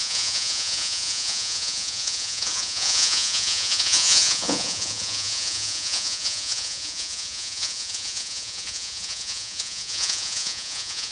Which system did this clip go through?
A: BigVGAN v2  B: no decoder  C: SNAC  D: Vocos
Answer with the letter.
D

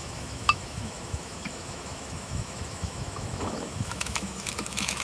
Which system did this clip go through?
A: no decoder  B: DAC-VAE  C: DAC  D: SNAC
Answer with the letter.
B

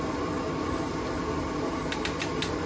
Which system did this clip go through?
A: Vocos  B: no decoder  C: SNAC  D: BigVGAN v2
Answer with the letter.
B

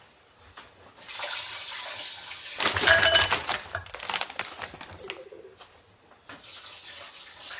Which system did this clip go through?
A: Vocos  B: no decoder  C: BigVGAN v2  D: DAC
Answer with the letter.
B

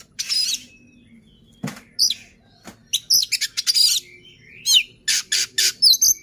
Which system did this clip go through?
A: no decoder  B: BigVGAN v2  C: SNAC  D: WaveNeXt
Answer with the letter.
A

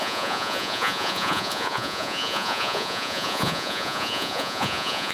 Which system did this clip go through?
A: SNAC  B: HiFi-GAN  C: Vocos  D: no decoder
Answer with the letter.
C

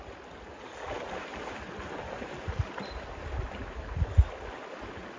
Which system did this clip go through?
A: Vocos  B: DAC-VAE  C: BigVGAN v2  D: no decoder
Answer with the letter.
D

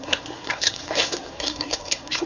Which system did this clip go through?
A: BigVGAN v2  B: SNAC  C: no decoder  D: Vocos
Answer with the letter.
B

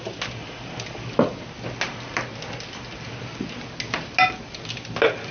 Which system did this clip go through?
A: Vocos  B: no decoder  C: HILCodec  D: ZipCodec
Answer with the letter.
B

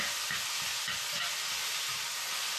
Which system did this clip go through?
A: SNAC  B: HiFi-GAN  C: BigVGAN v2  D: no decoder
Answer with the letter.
D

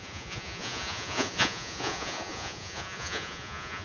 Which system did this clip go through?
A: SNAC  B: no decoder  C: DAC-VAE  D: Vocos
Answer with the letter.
D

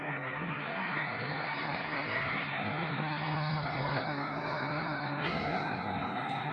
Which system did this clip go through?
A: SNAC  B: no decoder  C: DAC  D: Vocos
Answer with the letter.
A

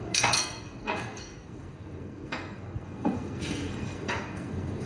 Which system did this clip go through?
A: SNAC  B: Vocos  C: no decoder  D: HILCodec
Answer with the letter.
A